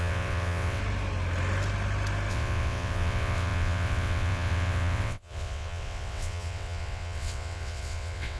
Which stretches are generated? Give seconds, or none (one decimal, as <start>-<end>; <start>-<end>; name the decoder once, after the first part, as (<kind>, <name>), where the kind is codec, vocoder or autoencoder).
0.0-0.8 (vocoder, WaveNeXt); 2.3-8.4